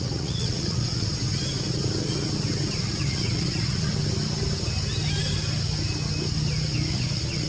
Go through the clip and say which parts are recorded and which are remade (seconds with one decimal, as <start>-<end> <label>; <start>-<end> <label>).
0.0-1.1 remade; 1.1-2.7 recorded; 2.7-3.9 remade; 3.9-6.9 recorded; 6.9-7.5 remade